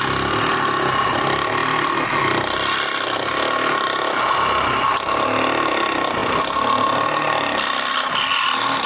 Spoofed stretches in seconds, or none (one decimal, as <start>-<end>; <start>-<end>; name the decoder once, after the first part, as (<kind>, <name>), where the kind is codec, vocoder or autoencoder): none